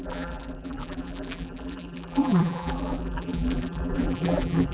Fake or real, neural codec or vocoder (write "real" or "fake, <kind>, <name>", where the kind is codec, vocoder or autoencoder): fake, vocoder, BigVGAN v2